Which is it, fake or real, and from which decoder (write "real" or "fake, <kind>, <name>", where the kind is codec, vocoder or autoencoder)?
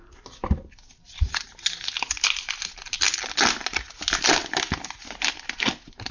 real